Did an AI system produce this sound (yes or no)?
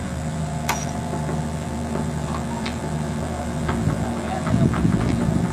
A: yes